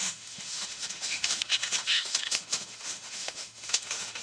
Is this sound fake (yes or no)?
yes